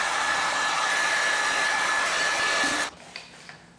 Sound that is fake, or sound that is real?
real